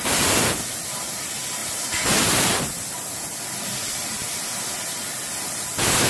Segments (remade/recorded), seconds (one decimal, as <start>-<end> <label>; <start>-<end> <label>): 0.0-6.1 recorded